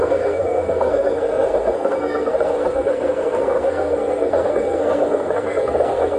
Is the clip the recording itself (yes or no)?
no